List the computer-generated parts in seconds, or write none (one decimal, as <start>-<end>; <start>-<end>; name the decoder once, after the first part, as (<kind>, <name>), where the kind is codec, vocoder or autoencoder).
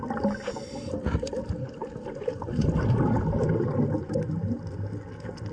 none